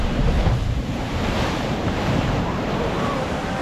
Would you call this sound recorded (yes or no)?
no